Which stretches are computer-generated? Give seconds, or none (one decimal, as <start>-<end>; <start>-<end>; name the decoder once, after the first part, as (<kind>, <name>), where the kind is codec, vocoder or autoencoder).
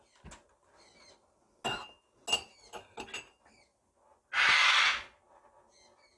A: none